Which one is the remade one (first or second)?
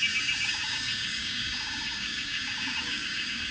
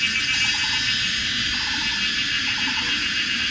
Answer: first